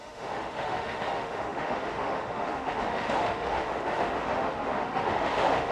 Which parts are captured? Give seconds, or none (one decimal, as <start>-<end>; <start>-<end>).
none